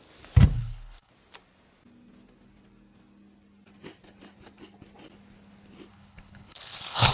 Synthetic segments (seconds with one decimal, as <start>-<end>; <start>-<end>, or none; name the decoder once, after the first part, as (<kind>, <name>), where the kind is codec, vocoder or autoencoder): 0.5-1.1 (codec, HILCodec); 5.9-7.1

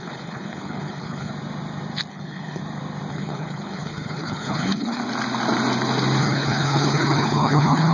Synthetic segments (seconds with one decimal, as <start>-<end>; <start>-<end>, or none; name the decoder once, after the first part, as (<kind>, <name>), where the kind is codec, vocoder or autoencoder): 0.0-1.3 (codec, HILCodec); 2.1-2.6; 3.1-5.0; 6.2-7.9